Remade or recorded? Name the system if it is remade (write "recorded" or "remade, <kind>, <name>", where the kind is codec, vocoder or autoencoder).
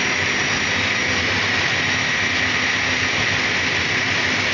recorded